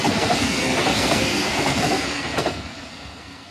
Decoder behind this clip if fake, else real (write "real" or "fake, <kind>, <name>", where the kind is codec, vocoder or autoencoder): fake, codec, SNAC